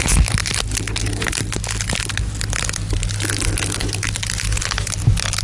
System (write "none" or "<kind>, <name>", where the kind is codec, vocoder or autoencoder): none